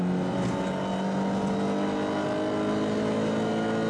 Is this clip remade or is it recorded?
recorded